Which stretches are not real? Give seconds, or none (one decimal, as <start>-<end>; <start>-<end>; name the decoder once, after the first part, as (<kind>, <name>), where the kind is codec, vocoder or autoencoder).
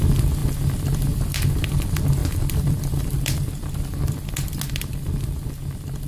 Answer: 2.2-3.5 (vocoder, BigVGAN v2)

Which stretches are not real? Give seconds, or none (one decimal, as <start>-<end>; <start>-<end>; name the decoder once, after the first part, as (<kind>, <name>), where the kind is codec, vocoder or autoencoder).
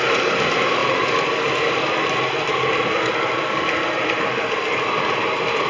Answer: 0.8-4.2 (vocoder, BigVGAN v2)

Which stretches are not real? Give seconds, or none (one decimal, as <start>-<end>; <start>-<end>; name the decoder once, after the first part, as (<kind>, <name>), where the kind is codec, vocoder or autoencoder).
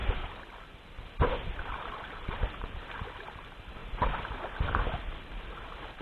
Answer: 0.0-2.9 (vocoder, BigVGAN v2)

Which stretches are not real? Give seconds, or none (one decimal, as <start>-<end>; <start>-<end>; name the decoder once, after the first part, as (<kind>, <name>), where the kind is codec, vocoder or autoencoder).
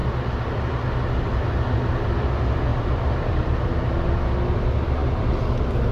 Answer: 0.0-0.7 (vocoder, BigVGAN v2); 2.7-3.8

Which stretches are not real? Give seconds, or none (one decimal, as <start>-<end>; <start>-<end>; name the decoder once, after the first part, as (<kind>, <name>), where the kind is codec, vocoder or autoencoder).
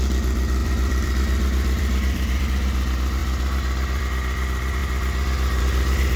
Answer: 0.6-2.4 (vocoder, BigVGAN v2)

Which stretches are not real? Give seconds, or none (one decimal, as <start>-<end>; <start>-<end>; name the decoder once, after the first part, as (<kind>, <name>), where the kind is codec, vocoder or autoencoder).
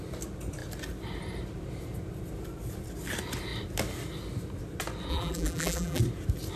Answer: 5.1-6.0 (vocoder, BigVGAN v2)